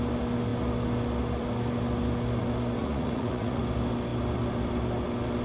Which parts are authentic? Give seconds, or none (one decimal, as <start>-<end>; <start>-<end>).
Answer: 0.0-2.8; 3.6-5.4